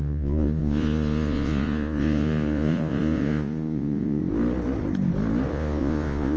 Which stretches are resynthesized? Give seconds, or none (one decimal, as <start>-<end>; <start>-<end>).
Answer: 0.0-4.2; 5.5-6.4